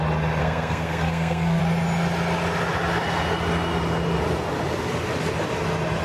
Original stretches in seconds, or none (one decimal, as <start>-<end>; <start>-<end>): 0.0-0.4; 1.6-6.0